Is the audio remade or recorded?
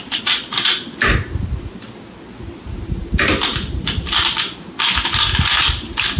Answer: recorded